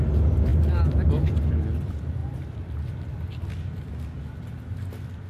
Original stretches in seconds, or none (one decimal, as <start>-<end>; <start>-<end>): 0.0-5.3